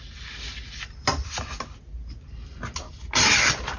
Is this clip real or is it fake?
real